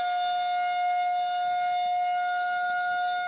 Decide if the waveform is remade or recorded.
recorded